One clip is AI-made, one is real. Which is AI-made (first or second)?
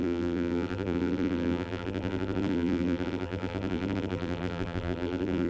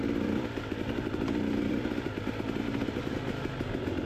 first